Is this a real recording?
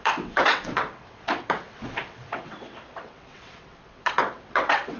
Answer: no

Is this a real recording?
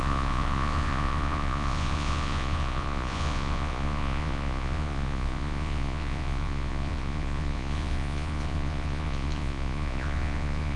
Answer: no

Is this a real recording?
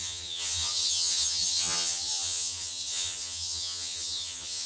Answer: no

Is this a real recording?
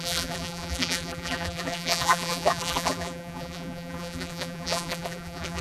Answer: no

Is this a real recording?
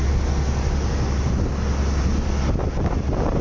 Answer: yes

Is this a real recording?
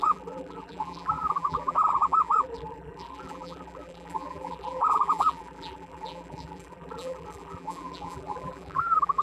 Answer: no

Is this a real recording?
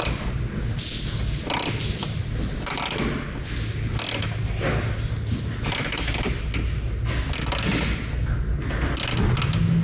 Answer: yes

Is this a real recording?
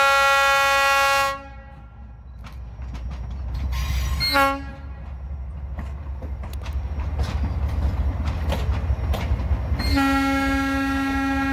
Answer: yes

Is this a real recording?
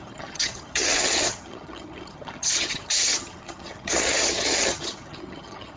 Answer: no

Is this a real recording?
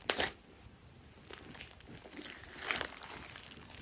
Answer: yes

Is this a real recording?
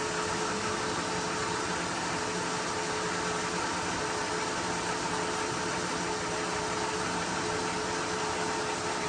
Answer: yes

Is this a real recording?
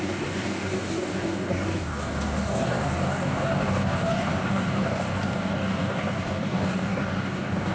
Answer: no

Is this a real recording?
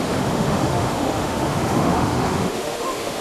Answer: no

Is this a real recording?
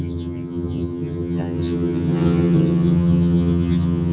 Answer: no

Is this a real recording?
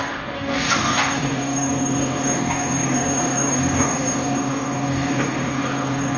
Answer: no